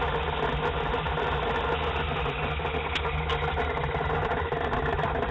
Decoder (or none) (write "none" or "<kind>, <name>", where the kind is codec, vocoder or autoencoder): none